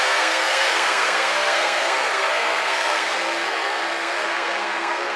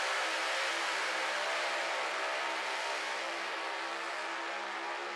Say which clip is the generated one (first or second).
first